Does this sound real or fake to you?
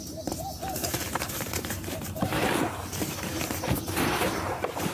fake